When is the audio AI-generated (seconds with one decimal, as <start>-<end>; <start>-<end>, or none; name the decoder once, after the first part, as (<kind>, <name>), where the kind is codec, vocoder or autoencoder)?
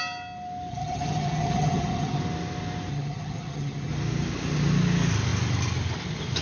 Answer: 0.7-2.2 (vocoder, HiFi-GAN); 2.9-3.9